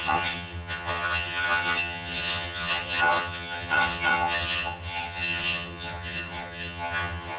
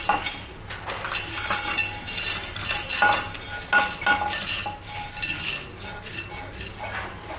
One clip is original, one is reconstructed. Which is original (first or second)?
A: second